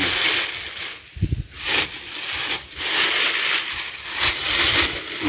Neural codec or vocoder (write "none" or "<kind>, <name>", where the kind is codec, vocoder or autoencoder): none